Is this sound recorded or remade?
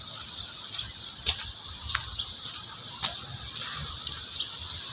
recorded